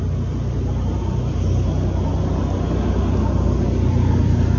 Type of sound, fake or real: real